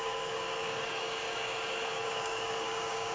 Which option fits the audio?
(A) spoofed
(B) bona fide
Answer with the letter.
A